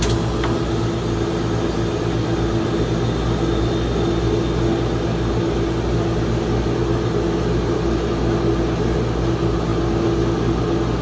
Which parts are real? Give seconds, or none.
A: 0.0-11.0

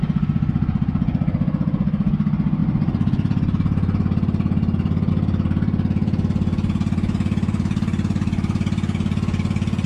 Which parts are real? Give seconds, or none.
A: 0.0-9.9

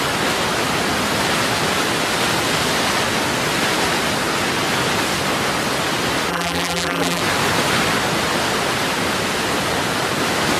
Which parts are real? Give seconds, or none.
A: 0.0-6.3; 7.2-10.6

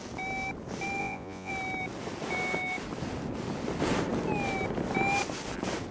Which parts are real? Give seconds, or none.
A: 0.0-1.0; 1.5-5.9